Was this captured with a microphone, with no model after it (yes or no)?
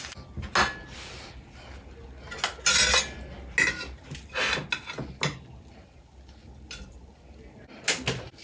yes